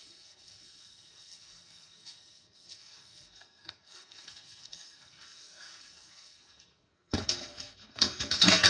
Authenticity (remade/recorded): remade